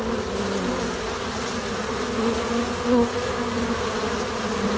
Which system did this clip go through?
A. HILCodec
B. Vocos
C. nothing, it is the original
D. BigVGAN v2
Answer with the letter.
C